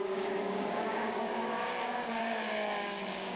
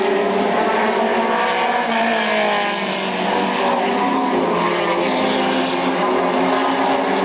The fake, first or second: first